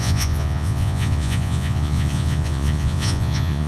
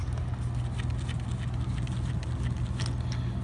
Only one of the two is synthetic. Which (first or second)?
first